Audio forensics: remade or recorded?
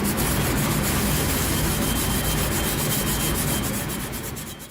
recorded